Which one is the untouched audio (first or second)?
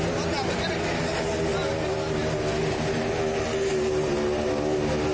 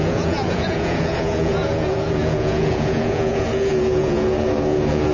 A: first